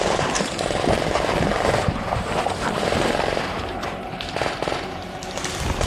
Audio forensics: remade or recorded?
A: remade